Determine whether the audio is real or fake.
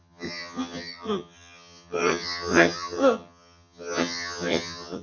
fake